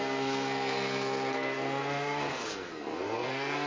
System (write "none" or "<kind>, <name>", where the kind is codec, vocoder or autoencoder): codec, SNAC